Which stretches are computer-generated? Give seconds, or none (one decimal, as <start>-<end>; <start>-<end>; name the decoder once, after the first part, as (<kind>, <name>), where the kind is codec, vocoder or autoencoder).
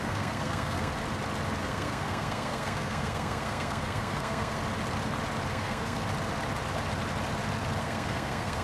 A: 0.0-0.9 (codec, SNAC); 1.6-4.6; 5.5-6.0; 7.8-8.6